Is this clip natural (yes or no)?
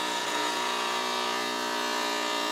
no